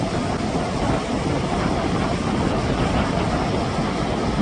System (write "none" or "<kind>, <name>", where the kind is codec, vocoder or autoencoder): none